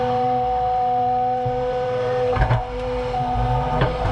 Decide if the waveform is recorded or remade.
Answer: remade